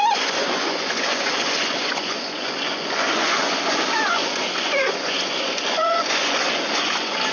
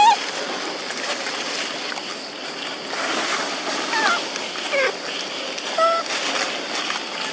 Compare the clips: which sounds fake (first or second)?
first